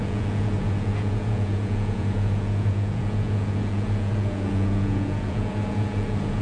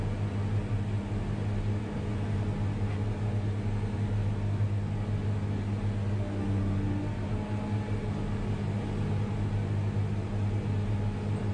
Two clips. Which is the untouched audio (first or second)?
second